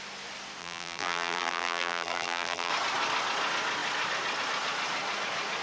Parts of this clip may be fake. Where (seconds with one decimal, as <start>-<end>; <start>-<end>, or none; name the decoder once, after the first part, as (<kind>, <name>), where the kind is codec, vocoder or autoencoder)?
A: 0.6-2.7 (vocoder, BigVGAN v2)